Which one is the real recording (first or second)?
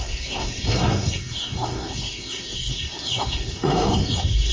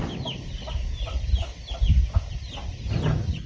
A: second